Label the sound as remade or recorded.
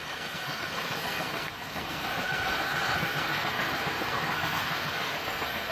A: remade